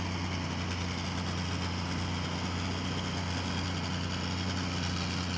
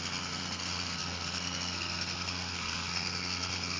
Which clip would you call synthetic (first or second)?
second